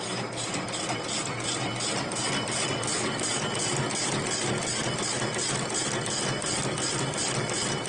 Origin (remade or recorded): recorded